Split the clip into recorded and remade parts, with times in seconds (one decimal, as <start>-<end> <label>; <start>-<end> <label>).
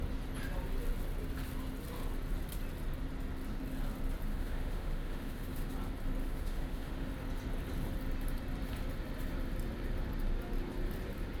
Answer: 0.0-4.3 recorded; 4.3-5.7 remade; 5.7-6.2 recorded; 6.2-7.1 remade; 7.1-11.4 recorded